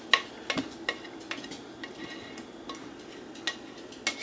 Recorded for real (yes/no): yes